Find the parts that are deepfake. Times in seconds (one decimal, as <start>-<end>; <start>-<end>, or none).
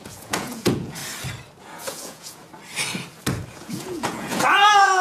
0.0-1.0; 1.6-2.4; 3.5-5.0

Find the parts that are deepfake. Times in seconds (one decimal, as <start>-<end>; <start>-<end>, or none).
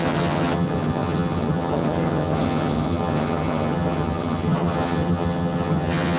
0.0-6.2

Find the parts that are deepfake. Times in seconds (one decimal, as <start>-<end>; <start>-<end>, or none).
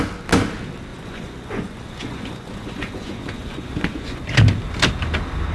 0.9-4.2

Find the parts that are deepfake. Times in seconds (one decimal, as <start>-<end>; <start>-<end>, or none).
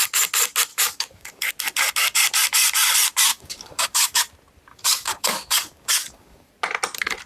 0.7-1.5; 3.3-4.2; 4.7-6.5